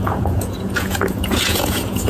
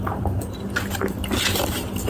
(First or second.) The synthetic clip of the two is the first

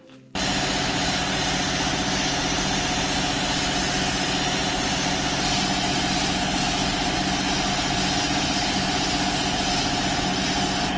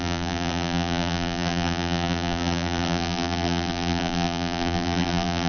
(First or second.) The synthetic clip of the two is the second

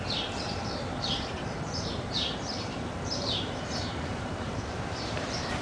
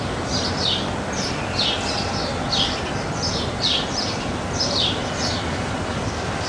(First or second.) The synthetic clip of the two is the first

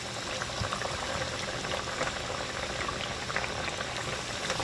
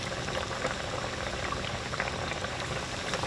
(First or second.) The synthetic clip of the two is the second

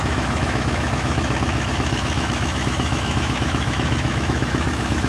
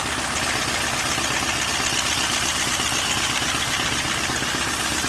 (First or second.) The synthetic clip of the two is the first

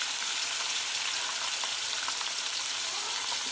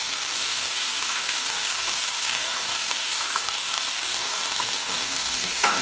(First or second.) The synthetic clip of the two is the second